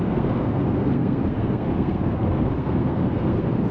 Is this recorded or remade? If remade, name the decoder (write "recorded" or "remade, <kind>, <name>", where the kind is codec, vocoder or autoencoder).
remade, codec, SNAC